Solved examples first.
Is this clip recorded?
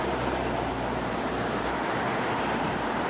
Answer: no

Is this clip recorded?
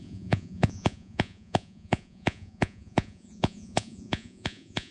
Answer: no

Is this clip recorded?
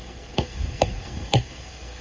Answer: no